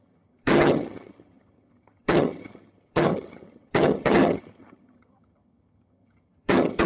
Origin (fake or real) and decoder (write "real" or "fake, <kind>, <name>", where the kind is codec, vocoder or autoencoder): fake, vocoder, HiFi-GAN